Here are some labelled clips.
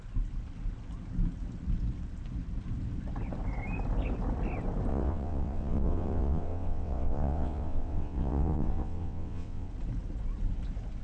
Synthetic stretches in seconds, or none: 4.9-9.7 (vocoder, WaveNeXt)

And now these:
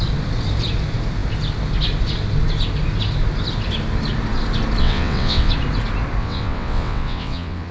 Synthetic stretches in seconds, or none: 4.8-5.5 (vocoder, WaveNeXt); 6.2-7.7

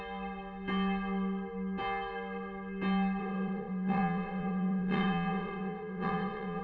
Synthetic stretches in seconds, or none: 3.2-6.6 (vocoder, WaveNeXt)